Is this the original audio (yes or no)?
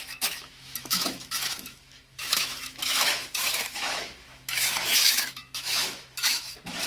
no